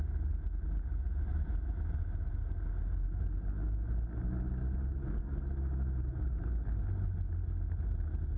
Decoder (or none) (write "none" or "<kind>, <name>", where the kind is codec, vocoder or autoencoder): none